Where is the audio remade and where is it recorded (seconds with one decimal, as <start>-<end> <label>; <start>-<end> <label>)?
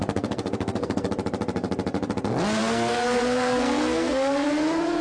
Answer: 0.0-1.1 remade; 1.1-2.6 recorded; 2.6-4.5 remade; 4.5-5.0 recorded